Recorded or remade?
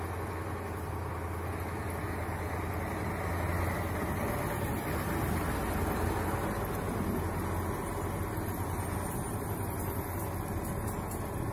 recorded